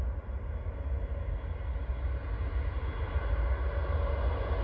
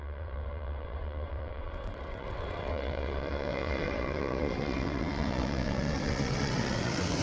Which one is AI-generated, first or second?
second